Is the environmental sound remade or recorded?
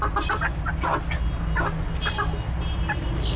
recorded